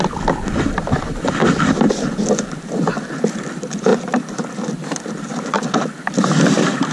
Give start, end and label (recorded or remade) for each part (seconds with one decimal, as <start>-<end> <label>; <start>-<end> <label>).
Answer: 0.0-6.9 recorded